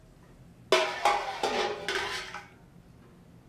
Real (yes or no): yes